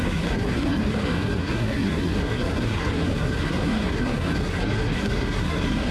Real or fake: fake